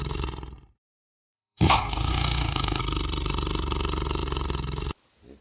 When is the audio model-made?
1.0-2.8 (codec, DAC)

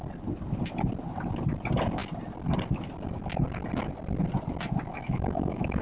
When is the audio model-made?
4.9-5.8 (autoencoder, DAC-VAE)